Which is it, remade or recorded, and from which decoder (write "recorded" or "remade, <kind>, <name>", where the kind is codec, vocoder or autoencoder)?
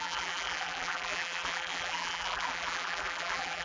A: remade, vocoder, BigVGAN v2